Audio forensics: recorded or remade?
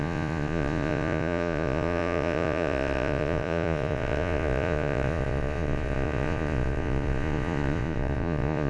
remade